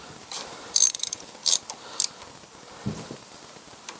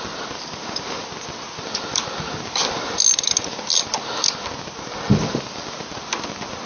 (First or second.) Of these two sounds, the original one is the second